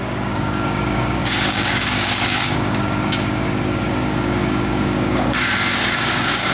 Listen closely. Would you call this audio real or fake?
fake